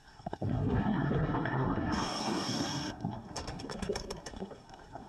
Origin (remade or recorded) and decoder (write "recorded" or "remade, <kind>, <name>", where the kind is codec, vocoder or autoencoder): remade, codec, SNAC